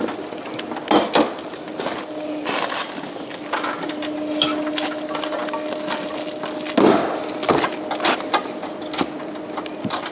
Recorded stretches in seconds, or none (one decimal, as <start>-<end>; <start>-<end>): 0.0-10.1